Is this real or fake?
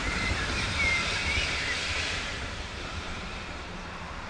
fake